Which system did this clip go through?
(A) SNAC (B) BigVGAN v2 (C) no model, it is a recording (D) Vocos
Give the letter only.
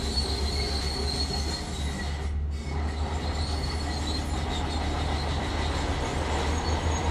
C